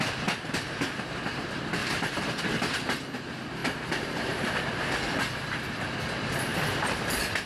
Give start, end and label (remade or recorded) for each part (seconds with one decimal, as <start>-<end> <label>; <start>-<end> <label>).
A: 0.0-1.8 recorded; 1.8-2.4 remade; 2.4-3.6 recorded; 3.6-4.7 remade; 4.7-6.5 recorded; 6.5-7.1 remade; 7.1-7.5 recorded